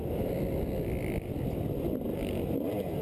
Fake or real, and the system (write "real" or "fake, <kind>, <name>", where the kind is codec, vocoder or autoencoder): real